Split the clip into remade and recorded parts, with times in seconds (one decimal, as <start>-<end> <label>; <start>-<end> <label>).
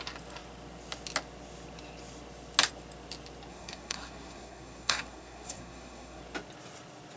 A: 0.0-3.5 recorded; 3.5-6.2 remade; 6.2-7.2 recorded